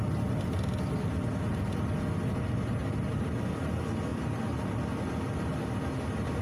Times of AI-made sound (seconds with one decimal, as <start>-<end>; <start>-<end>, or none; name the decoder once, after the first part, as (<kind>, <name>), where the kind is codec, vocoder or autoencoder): 2.8-3.3 (vocoder, BigVGAN v2); 4.1-4.8